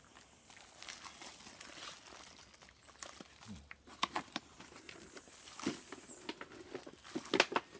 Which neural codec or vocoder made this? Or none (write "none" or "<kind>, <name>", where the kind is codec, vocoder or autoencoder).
none